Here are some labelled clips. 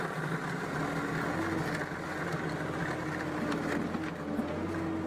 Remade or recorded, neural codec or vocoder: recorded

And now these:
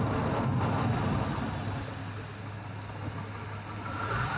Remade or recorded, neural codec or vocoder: recorded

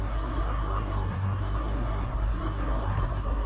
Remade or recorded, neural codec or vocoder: remade, codec, SNAC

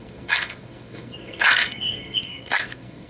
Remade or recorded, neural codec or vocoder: remade, codec, SNAC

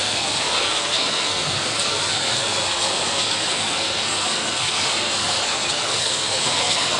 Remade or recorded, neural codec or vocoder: remade, codec, SNAC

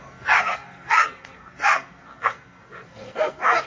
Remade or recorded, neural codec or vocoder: remade, codec, SNAC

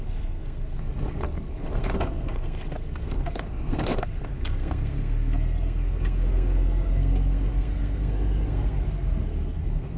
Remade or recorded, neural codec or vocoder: remade, codec, SNAC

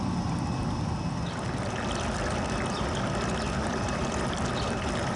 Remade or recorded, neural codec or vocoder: recorded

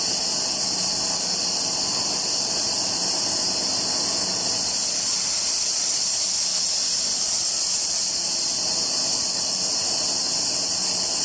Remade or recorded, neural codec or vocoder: recorded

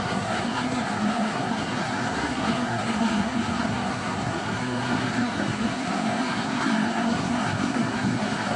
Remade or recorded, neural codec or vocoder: remade, codec, SNAC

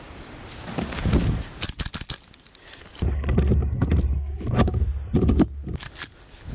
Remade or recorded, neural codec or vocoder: recorded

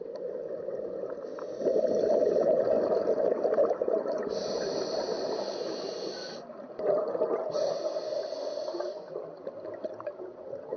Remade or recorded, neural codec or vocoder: recorded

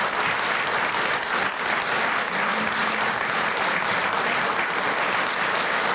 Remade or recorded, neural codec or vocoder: recorded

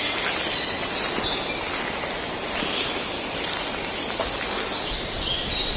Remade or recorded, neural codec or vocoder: recorded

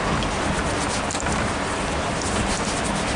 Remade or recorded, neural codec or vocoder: recorded